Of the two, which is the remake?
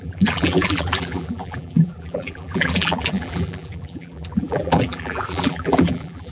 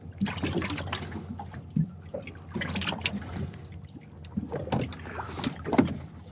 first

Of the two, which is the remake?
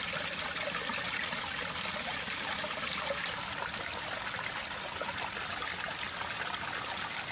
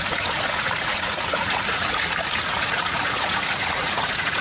second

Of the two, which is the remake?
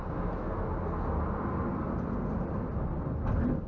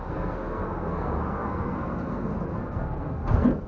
second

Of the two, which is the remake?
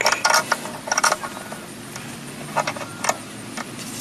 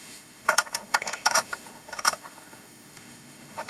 second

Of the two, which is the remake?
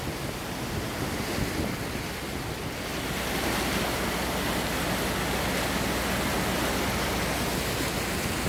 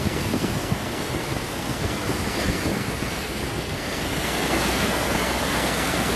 second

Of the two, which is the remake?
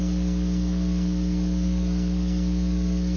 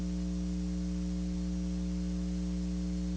first